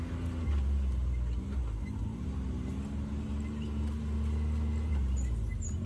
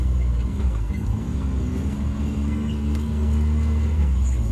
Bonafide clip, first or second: first